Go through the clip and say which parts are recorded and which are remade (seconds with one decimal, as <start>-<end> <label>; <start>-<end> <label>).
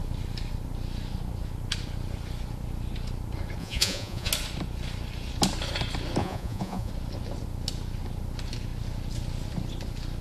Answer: 0.0-3.6 recorded; 3.6-4.3 remade; 4.3-6.2 recorded; 6.2-6.9 remade; 6.9-10.2 recorded